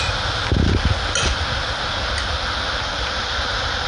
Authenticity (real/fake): real